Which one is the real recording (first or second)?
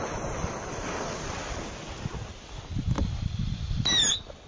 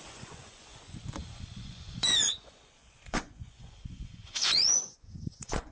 first